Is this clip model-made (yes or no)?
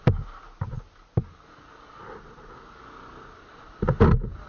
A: no